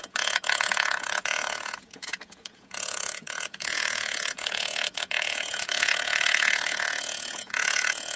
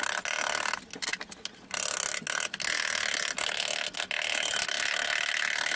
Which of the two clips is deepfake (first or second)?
first